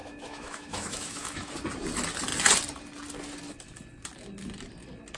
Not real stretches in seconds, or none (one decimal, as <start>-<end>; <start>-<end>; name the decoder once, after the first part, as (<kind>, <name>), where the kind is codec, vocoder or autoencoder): 0.0-1.5 (autoencoder, DAC-VAE)